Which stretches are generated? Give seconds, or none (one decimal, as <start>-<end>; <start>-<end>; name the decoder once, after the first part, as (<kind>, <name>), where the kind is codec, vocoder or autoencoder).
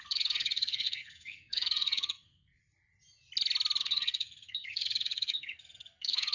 0.0-2.6 (codec, SNAC); 3.8-6.3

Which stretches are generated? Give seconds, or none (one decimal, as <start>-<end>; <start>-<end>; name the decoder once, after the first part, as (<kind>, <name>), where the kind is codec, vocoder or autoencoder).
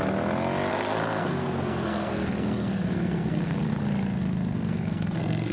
0.7-3.8 (codec, SNAC); 4.2-5.5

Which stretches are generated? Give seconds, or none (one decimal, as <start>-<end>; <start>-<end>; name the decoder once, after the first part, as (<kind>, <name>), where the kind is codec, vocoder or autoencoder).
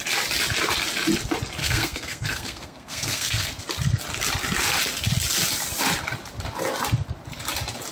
1.6-3.6 (codec, SNAC)